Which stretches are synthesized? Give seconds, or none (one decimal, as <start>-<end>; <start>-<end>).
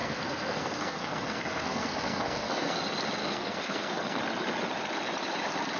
0.0-2.8; 3.2-4.2